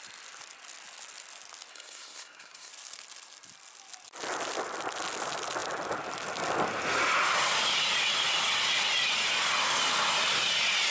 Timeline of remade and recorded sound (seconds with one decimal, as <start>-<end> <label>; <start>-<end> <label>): 0.0-1.7 recorded; 1.7-2.7 remade; 2.7-10.9 recorded